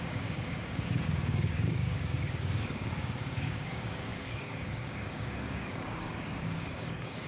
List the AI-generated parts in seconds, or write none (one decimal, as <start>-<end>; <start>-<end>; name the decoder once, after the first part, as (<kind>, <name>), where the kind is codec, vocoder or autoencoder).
0.0-7.3 (codec, DAC)